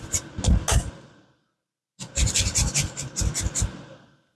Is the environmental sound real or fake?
real